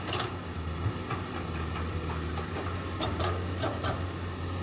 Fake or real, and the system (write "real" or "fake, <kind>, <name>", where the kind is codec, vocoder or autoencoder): real